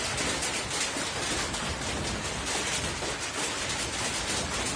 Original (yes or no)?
yes